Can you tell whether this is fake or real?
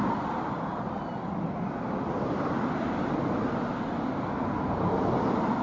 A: real